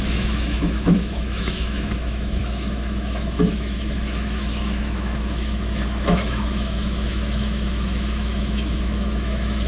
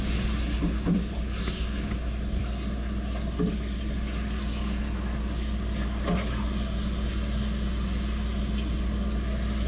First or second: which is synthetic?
first